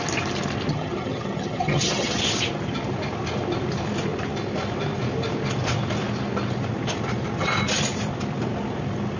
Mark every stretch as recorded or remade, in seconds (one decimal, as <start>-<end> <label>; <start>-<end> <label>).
0.0-0.7 recorded; 0.7-2.2 remade; 2.2-9.2 recorded